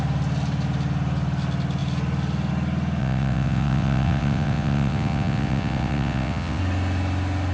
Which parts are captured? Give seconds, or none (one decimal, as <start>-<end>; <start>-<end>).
0.0-3.0; 6.6-7.5